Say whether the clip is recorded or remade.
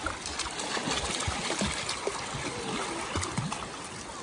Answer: recorded